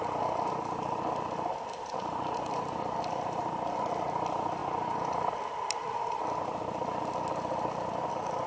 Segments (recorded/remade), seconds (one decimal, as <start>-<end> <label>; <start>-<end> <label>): 0.0-8.5 recorded